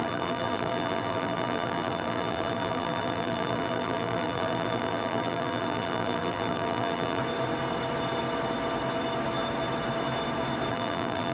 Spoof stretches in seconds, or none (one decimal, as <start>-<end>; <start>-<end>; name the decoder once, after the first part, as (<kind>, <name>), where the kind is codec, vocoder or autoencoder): 0.0-7.2 (vocoder, BigVGAN v2); 10.7-11.3